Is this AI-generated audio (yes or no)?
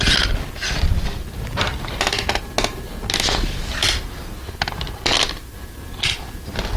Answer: no